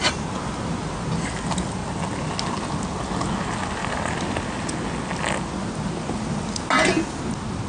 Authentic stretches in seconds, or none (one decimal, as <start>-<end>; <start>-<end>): 0.0-7.7